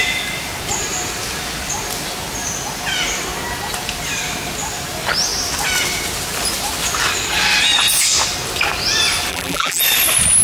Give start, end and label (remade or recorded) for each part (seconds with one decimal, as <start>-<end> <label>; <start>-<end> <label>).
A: 0.0-9.3 recorded; 9.3-9.8 remade; 9.8-10.4 recorded